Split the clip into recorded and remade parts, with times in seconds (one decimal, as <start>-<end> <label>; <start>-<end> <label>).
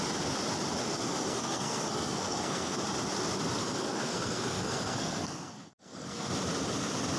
0.0-0.8 recorded; 0.8-2.8 remade; 2.8-3.6 recorded; 3.6-6.3 remade; 6.3-7.2 recorded